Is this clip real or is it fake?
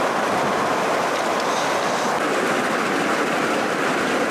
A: real